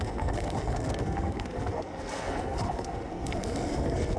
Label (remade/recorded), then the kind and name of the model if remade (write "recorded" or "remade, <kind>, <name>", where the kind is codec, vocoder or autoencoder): remade, codec, SNAC